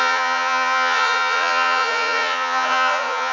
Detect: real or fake fake